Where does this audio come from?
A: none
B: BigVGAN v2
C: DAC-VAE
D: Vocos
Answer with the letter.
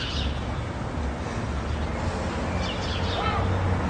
A